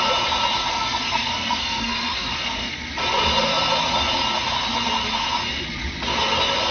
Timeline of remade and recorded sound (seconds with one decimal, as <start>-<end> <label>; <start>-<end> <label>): 0.0-0.7 recorded; 0.7-2.9 remade; 2.9-6.7 recorded

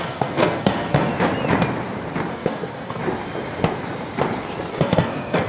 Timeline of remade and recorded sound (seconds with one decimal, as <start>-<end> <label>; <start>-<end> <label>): 0.0-1.1 remade; 1.1-2.3 recorded; 2.3-3.0 remade; 3.0-4.7 recorded; 4.7-5.5 remade

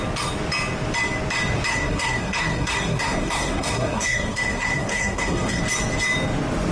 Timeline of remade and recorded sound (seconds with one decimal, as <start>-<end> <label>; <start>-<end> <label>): 0.0-1.7 recorded; 1.7-5.6 remade; 5.6-6.7 recorded